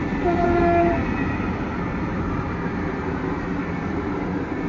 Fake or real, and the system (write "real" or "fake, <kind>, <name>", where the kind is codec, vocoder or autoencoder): real